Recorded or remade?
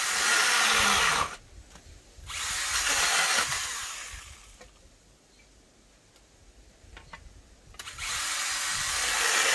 recorded